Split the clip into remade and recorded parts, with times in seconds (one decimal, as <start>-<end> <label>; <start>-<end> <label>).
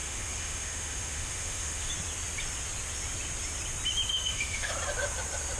0.0-1.9 remade; 1.9-4.1 recorded; 4.1-4.7 remade; 4.7-5.6 recorded